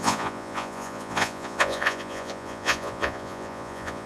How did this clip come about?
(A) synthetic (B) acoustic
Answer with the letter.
A